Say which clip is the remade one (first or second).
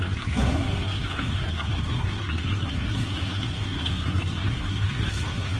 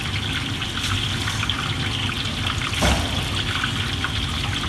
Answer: first